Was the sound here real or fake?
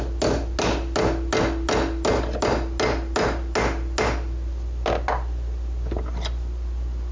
real